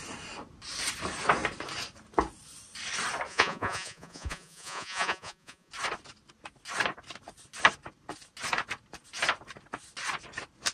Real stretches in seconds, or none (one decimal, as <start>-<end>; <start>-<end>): 0.0-3.3; 5.7-10.7